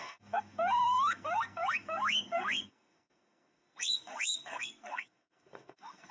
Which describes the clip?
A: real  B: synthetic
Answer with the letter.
B